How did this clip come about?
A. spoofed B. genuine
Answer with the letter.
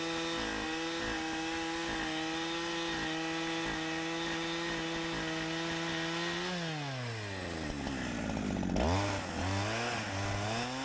B